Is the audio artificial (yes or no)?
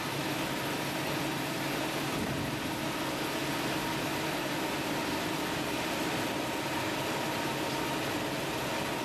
no